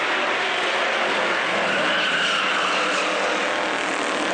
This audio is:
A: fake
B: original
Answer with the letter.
B